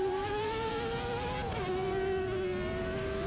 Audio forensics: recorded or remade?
recorded